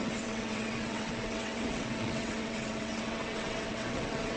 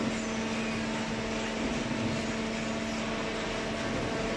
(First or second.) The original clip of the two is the second